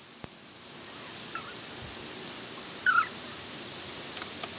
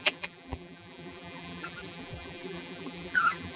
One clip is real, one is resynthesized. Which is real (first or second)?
first